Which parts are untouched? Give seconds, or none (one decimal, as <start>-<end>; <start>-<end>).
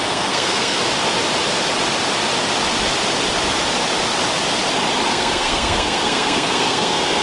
0.8-5.1